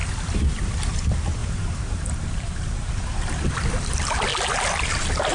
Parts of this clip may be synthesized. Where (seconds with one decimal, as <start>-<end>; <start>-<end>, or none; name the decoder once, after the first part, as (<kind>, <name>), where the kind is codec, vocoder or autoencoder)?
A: 1.4-3.0 (vocoder, BigVGAN v2)